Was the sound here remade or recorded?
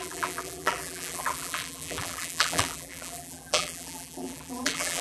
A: remade